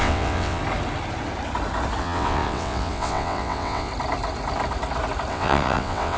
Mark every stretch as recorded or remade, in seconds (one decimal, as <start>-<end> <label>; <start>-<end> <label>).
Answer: 0.0-0.6 remade; 0.6-2.0 recorded; 2.0-3.9 remade; 3.9-5.3 recorded; 5.3-6.2 remade